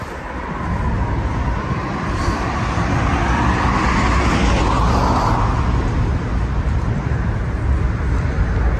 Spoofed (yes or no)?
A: no